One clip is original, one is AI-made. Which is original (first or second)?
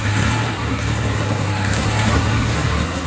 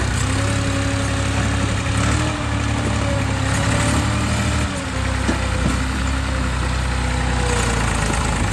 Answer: second